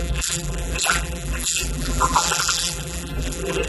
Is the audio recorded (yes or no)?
no